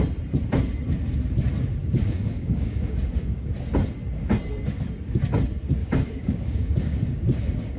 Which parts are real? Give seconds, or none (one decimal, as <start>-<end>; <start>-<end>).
0.0-1.8; 3.5-5.8; 7.2-7.8